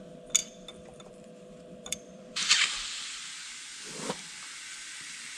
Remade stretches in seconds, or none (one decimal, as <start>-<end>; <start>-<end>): 0.4-3.0